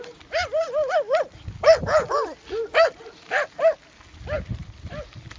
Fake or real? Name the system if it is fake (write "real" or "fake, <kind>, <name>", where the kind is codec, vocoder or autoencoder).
real